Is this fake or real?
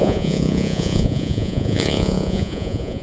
fake